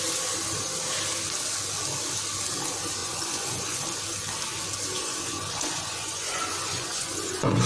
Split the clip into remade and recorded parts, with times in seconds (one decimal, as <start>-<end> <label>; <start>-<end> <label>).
0.0-3.0 recorded; 3.0-3.8 remade; 3.8-5.0 recorded; 5.0-7.7 remade